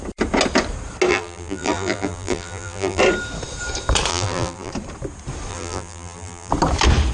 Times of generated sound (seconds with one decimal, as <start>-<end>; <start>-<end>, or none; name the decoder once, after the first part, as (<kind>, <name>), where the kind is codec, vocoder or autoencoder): 1.1-3.0 (vocoder, BigVGAN v2); 4.1-4.7; 5.5-6.5